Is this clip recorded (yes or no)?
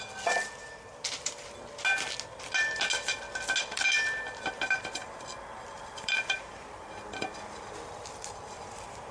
yes